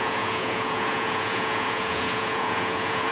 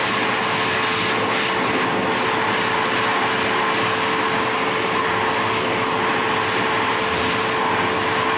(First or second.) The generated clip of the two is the first